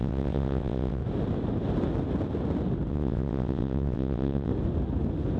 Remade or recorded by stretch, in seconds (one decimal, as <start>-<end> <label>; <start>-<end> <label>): 0.0-1.0 remade; 1.0-2.9 recorded; 2.9-4.5 remade; 4.5-5.4 recorded